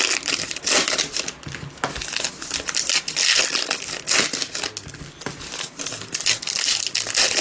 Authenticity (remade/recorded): recorded